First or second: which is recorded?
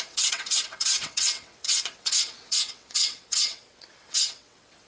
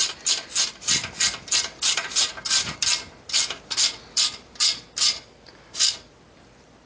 second